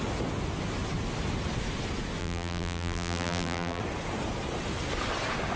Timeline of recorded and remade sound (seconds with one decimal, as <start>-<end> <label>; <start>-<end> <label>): 0.0-2.2 recorded; 2.2-3.8 remade; 3.8-5.6 recorded